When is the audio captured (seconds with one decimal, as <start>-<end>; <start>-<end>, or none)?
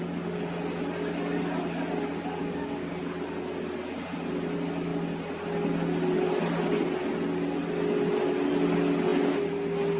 0.0-2.4; 3.0-10.0